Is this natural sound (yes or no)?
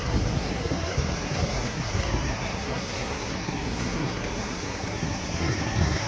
no